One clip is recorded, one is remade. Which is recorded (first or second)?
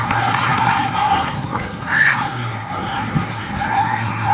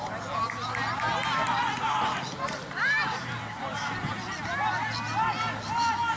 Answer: second